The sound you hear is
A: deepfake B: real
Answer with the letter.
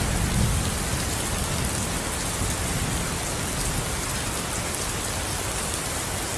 B